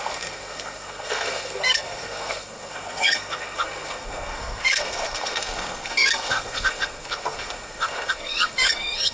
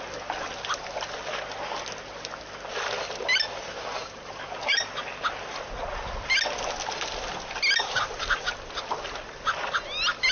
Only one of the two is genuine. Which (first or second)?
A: second